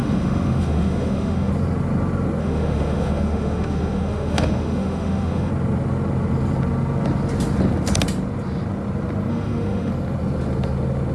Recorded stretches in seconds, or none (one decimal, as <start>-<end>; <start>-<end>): 1.5-2.4; 5.5-9.3; 9.9-11.1